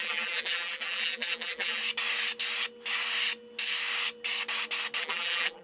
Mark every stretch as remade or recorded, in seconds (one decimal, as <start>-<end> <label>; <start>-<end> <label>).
0.0-1.8 remade; 1.8-5.0 recorded; 5.0-5.6 remade